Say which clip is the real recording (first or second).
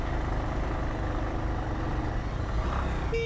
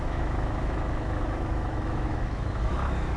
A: first